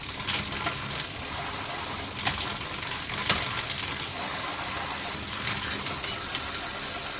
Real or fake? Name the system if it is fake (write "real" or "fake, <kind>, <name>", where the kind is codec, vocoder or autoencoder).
real